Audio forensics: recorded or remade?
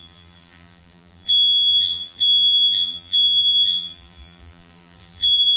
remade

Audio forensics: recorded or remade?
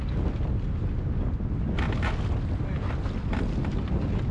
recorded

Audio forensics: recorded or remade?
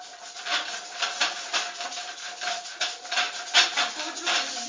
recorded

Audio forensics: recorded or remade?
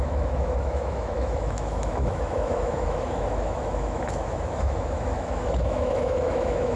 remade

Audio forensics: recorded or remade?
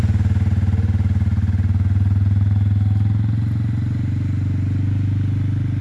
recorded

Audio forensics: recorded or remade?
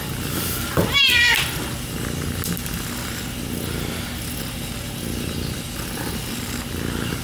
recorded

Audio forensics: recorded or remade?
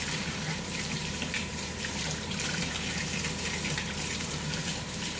remade